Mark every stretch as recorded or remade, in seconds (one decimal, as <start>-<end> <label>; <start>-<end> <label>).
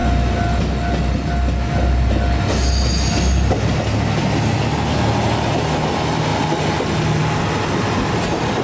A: 0.0-8.6 recorded